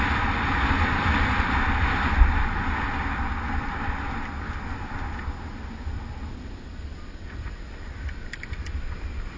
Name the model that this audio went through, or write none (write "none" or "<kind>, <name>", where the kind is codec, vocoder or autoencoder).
none